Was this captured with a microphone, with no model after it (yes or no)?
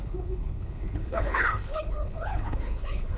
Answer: no